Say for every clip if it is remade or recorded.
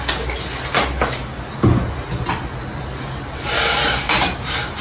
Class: recorded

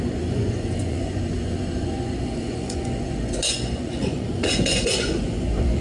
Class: remade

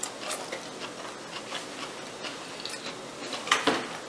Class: recorded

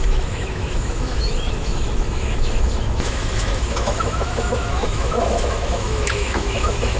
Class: remade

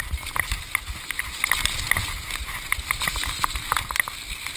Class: recorded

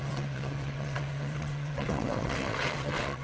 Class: remade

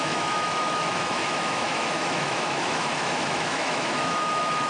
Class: remade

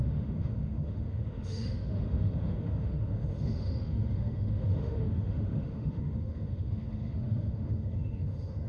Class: remade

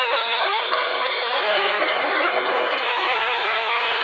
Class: remade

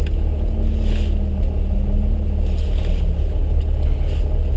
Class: recorded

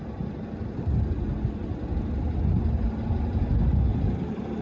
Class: recorded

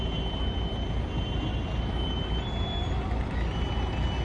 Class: recorded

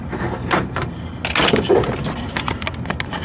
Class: recorded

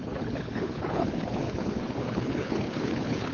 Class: remade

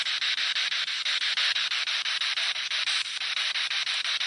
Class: remade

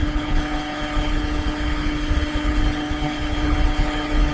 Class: remade